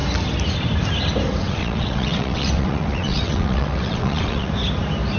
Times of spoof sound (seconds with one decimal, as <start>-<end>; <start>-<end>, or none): 1.4-4.5